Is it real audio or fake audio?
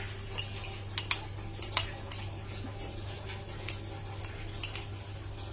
real